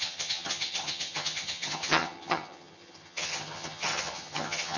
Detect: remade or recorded remade